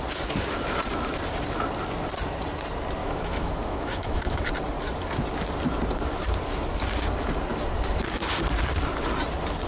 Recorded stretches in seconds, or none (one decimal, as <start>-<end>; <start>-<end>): 0.0-3.0; 4.4-9.7